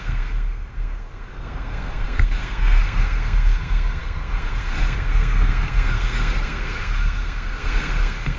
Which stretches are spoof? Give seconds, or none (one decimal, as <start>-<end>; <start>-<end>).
0.0-8.4

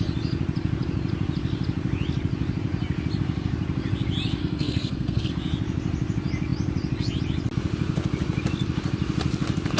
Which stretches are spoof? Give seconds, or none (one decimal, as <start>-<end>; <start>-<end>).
4.4-5.3

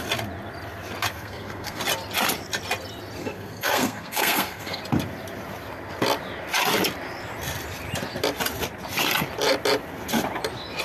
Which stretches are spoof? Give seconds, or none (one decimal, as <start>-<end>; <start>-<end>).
1.1-1.8; 3.2-4.8

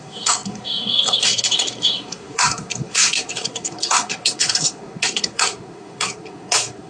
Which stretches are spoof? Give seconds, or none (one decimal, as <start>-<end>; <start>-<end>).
0.0-6.9